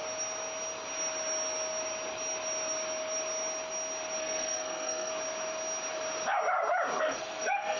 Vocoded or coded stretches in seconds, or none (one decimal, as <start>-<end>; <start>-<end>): 4.2-5.1; 7.0-7.8

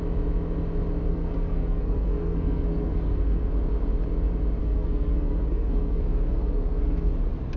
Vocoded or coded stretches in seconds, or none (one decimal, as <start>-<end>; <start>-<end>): 1.1-3.5; 4.6-7.1

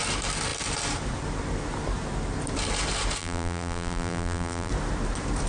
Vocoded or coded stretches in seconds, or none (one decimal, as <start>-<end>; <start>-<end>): 3.2-4.7